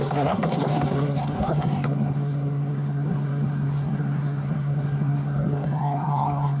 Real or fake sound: fake